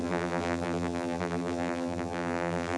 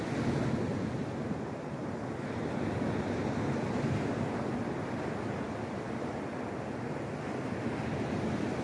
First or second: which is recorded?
second